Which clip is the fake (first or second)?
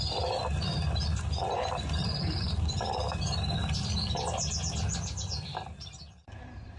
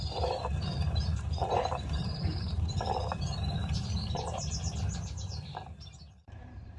second